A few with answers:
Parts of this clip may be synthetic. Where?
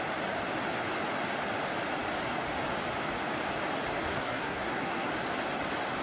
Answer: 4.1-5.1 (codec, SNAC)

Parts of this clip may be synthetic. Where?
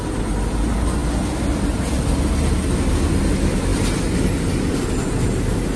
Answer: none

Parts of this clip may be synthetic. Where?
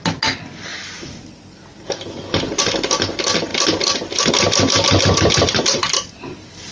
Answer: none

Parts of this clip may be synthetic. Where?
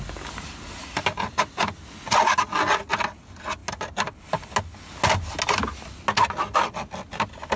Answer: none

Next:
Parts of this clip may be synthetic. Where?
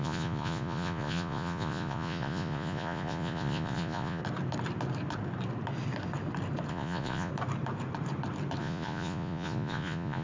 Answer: 0.0-4.2 (vocoder, Vocos); 6.7-7.3; 8.6-10.2